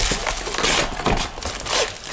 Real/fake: real